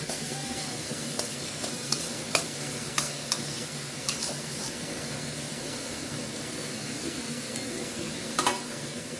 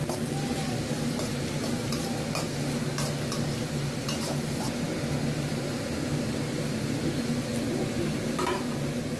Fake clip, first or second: first